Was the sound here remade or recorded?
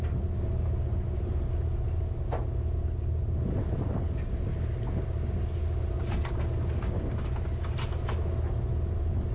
recorded